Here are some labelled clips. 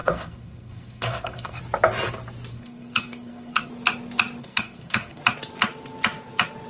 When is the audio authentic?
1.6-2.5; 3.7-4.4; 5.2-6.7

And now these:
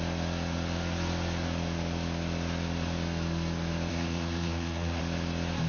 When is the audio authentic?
0.0-3.9; 5.0-5.7

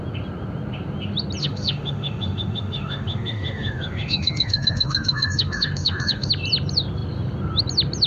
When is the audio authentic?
0.0-1.4; 6.3-8.1

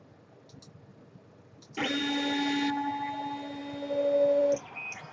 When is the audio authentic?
0.0-5.1

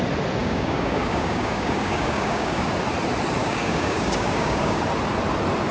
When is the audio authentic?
0.0-0.4; 2.7-3.4; 4.8-5.7

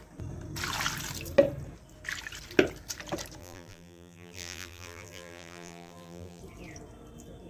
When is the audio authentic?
0.0-3.4; 6.4-7.5